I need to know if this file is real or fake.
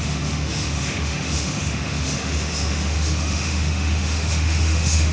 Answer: fake